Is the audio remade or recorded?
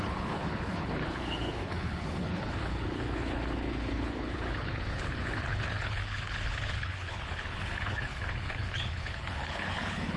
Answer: remade